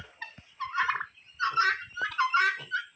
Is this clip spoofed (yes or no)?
no